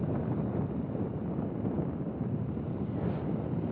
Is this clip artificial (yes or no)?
no